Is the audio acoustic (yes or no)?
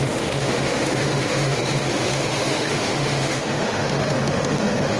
no